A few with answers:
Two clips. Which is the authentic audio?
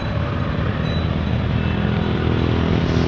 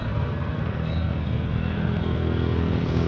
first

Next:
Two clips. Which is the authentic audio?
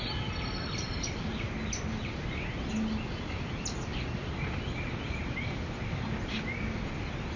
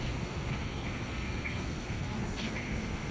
first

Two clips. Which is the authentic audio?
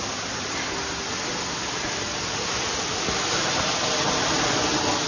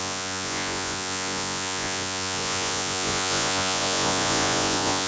first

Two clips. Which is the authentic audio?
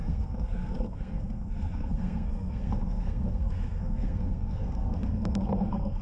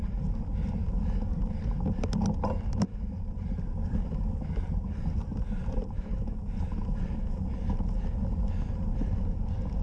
second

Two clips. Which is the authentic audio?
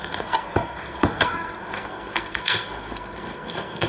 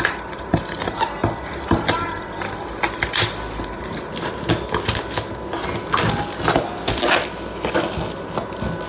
second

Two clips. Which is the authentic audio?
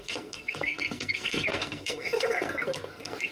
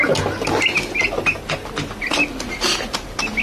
second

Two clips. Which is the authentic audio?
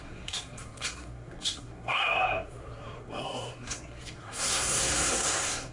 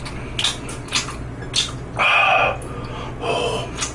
second